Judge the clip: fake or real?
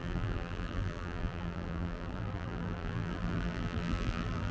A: fake